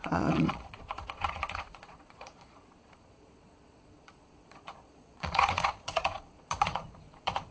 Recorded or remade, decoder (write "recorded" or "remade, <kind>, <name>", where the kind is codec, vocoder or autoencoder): remade, vocoder, Vocos